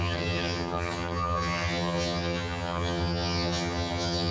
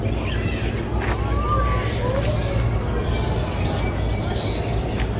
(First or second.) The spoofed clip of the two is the first